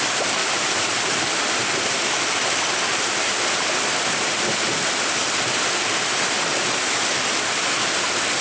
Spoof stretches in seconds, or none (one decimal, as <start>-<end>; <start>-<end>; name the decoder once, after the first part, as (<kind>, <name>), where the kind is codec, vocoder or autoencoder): 0.4-1.2 (vocoder, BigVGAN v2); 1.6-6.6